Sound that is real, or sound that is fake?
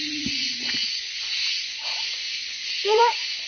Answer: fake